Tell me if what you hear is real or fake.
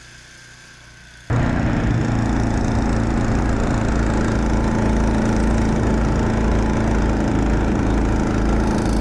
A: real